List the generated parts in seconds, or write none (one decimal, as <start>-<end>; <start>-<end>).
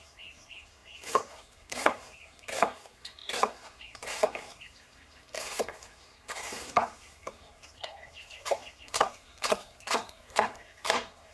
0.0-11.3